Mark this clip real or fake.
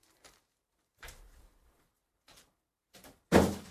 fake